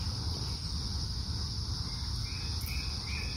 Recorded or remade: recorded